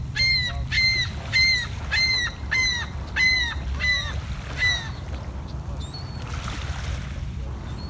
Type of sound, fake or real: real